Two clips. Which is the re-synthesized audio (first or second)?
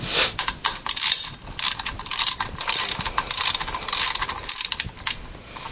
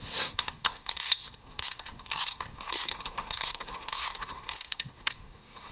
second